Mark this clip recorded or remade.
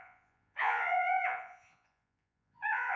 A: remade